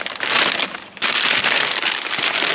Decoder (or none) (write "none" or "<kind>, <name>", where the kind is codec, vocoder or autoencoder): none